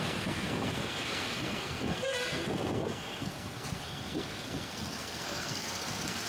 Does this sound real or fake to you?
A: fake